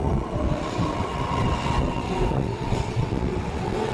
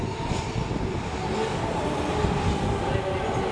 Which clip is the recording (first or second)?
second